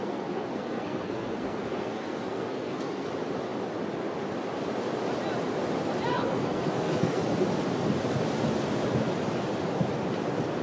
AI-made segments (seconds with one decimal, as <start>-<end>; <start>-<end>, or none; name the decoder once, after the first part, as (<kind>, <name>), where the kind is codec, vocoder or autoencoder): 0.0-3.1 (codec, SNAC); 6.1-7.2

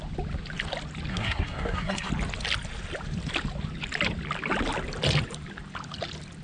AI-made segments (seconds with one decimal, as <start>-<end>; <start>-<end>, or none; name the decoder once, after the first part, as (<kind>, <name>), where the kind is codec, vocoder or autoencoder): 1.1-2.1 (codec, SNAC)

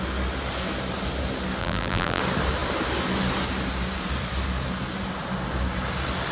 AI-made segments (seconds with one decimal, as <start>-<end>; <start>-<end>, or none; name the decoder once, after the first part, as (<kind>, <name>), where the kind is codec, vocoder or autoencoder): 1.6-2.2 (vocoder, BigVGAN v2)

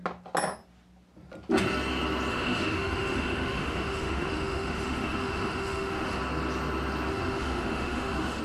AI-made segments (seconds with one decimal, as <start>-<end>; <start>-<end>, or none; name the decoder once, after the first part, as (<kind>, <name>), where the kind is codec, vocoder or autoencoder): 2.3-6.2 (autoencoder, DAC-VAE); 7.1-8.4

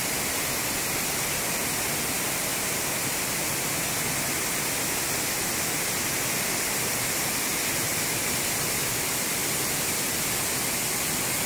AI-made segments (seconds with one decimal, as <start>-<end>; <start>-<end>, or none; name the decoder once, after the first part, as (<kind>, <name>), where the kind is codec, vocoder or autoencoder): 2.5-3.8 (vocoder, BigVGAN v2); 6.9-7.5; 7.9-10.1